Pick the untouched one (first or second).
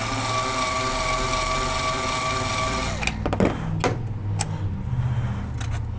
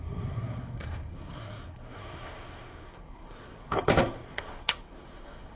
first